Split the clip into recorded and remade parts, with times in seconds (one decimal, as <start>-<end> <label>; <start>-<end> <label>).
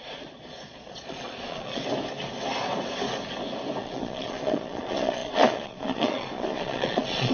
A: 0.0-1.8 remade; 1.8-3.8 recorded; 3.8-7.3 remade